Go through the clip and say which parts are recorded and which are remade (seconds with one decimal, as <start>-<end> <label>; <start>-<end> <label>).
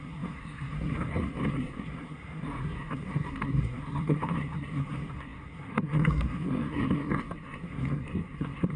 0.0-8.8 remade